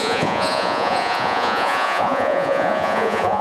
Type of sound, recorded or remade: remade